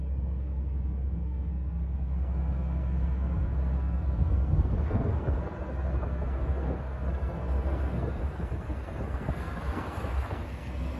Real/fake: fake